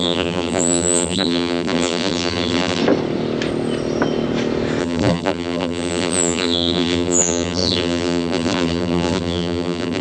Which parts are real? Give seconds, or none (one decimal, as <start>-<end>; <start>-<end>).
2.8-4.8